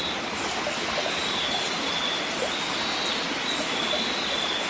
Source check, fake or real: real